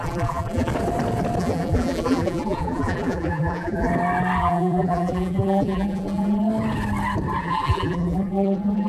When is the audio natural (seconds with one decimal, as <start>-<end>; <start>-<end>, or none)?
0.7-1.4; 3.9-4.4; 6.5-7.4